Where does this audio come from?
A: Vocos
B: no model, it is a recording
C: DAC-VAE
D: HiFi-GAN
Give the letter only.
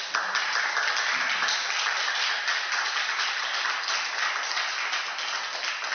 B